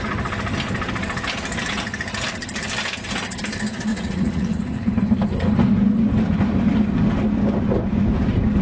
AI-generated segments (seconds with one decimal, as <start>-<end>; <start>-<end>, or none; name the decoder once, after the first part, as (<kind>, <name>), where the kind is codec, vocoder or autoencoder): 3.9-4.9 (vocoder, Vocos)